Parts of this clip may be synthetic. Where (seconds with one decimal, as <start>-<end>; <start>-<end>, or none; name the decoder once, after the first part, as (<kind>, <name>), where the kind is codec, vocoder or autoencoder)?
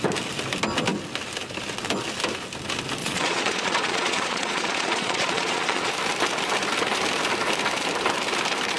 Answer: 3.0-5.9 (vocoder, Vocos)